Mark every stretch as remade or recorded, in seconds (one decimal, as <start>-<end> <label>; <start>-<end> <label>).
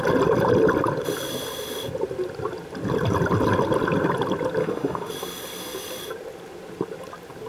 0.0-4.6 recorded; 4.6-5.1 remade; 5.1-7.5 recorded